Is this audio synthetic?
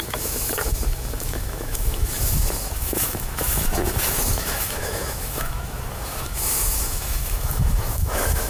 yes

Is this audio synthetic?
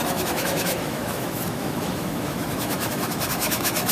yes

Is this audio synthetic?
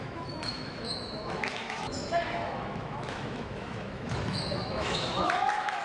yes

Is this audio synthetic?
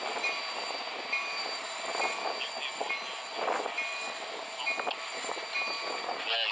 no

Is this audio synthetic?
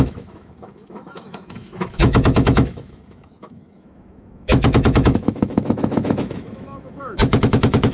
yes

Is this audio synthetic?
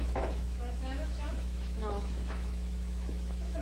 yes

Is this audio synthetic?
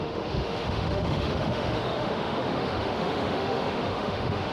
yes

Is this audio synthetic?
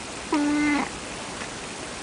no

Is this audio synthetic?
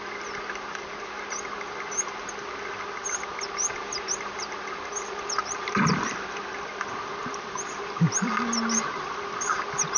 no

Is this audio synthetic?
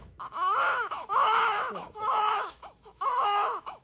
yes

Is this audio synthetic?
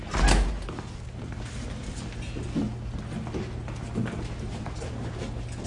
no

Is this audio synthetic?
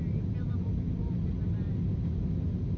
no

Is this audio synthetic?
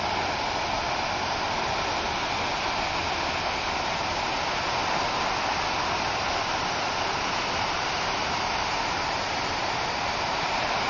no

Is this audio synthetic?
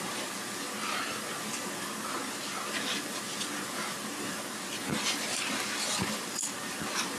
no